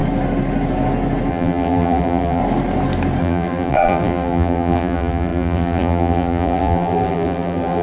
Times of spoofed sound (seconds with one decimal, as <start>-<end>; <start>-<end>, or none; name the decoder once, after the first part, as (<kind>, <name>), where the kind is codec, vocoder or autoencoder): 1.3-2.4 (vocoder, BigVGAN v2); 3.2-7.8